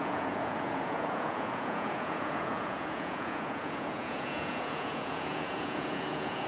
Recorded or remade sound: remade